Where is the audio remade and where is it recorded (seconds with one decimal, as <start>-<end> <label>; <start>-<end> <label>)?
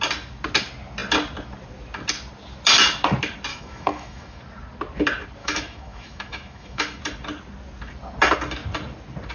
0.0-3.5 recorded; 3.5-4.4 remade; 4.4-5.4 recorded; 5.4-7.0 remade; 7.0-9.3 recorded